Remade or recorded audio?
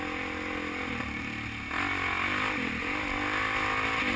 recorded